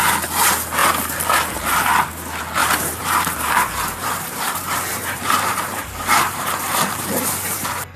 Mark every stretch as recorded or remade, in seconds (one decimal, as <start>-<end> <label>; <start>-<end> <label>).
0.0-2.6 recorded; 2.6-4.5 remade; 4.5-4.9 recorded; 4.9-8.0 remade